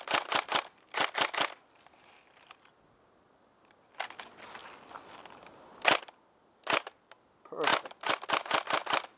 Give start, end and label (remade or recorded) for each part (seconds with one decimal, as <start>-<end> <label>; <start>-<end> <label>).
0.0-9.2 recorded